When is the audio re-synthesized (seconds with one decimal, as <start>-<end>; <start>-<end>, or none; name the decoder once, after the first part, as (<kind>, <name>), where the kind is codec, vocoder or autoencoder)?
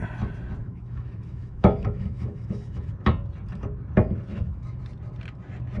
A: 0.6-2.9 (autoencoder, DAC-VAE); 4.3-4.8